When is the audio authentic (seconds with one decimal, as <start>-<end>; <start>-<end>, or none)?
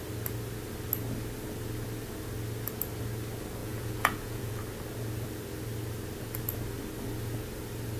0.0-3.6; 4.6-8.0